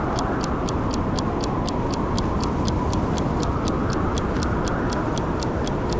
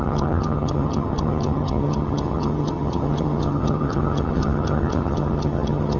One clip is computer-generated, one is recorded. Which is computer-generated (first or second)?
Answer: second